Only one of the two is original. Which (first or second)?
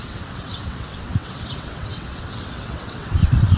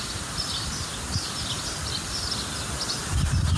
second